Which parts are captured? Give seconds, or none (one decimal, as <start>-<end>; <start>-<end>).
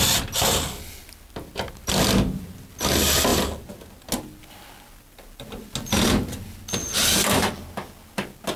0.0-6.8; 7.5-8.6